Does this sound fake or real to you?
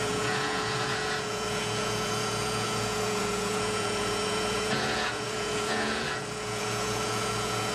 fake